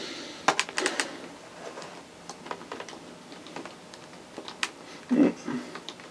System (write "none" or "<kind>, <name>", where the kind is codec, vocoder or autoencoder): none